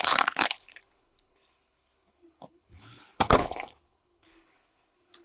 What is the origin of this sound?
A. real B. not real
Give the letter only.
B